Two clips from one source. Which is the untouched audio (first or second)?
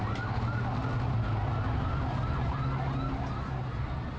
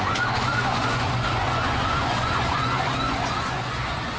first